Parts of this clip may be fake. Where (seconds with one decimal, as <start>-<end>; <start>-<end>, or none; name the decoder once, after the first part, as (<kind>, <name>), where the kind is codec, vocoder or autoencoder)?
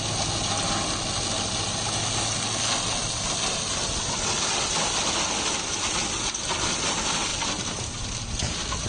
none